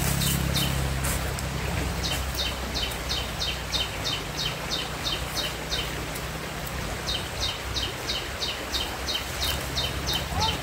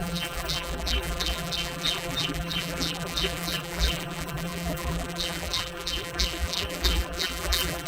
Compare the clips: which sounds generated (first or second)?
second